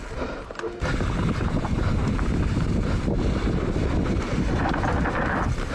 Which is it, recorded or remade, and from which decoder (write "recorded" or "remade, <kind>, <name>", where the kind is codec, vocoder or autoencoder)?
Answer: recorded